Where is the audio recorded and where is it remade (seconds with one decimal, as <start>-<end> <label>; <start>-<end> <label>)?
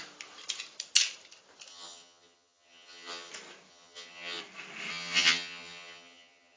0.0-1.7 recorded; 1.7-3.3 remade; 3.3-3.7 recorded; 3.7-4.4 remade; 4.4-4.9 recorded; 4.9-6.6 remade